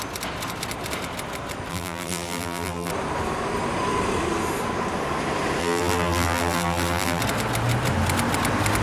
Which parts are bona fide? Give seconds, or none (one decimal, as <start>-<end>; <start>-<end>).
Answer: 0.0-1.7; 2.9-5.6; 7.2-8.8